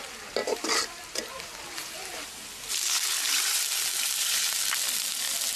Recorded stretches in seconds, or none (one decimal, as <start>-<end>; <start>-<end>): 0.0-0.4; 1.4-1.8; 5.0-5.6